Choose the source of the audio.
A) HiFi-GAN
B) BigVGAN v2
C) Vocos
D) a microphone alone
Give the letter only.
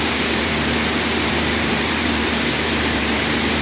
B